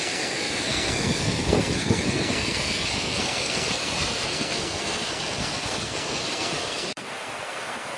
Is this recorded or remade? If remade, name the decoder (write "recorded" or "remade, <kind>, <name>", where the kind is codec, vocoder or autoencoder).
remade, codec, SNAC